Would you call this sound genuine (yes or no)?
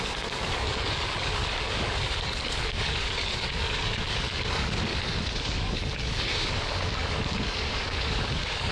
no